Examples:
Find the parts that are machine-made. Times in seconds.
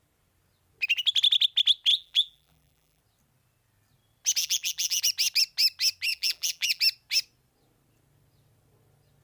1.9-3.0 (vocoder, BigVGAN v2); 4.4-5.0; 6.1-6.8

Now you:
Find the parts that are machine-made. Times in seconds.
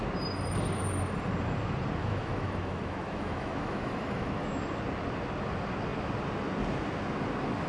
2.0-4.6 (autoencoder, DAC-VAE)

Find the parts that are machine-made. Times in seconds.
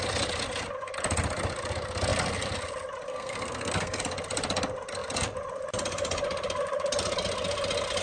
3.1-4.0 (codec, SNAC)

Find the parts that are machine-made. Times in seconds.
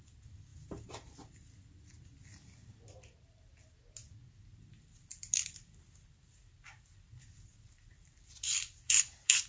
0.5-1.5 (vocoder, BigVGAN v2); 4.5-9.5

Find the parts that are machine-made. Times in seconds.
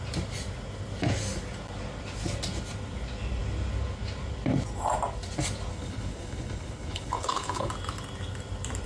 5.7-7.7 (codec, HILCodec)